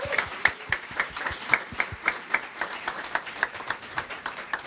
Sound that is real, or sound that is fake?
fake